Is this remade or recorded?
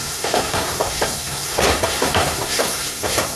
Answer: remade